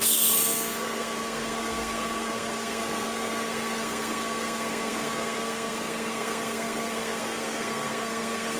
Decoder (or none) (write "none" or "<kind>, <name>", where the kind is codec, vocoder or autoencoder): codec, SNAC